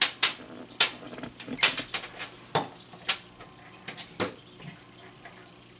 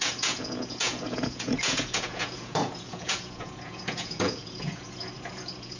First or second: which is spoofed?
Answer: second